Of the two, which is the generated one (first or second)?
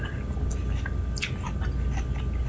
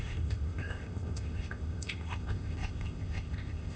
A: second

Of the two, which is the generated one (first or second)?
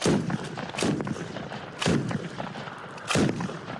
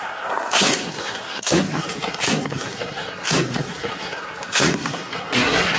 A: second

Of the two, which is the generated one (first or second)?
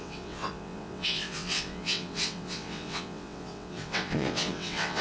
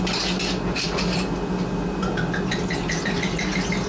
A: first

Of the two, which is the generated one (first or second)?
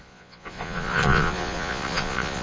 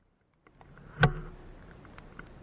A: first